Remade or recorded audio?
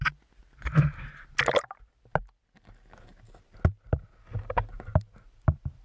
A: recorded